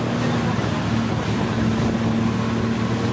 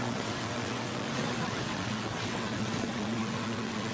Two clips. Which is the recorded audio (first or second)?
first